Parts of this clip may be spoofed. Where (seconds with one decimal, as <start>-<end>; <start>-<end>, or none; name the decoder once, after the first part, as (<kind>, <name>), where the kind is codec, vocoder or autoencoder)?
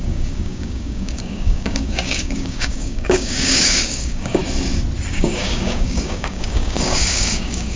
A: 0.0-4.4 (codec, DAC); 5.1-7.8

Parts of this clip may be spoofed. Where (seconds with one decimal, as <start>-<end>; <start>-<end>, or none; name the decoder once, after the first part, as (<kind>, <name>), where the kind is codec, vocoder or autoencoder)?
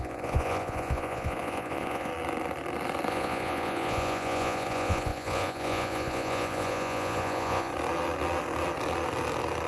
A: 0.0-2.1 (vocoder, Vocos); 3.1-7.7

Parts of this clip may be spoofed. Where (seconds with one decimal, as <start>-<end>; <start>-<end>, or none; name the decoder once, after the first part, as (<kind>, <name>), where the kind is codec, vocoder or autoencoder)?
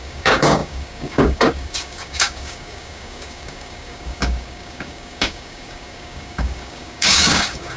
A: 0.0-7.8 (codec, DAC)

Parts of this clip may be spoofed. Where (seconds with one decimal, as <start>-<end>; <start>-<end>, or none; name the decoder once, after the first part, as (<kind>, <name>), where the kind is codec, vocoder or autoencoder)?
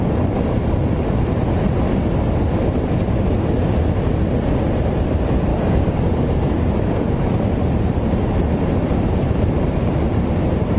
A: 5.5-7.2 (codec, DAC)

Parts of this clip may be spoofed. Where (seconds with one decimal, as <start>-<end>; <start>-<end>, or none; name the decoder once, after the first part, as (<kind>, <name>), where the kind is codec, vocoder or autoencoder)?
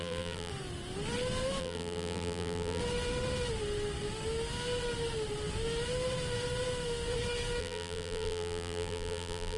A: 0.0-0.5 (vocoder, BigVGAN v2); 1.6-2.8; 7.6-9.6